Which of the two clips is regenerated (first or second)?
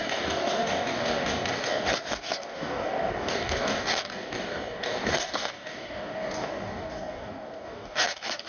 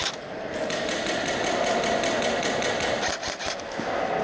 first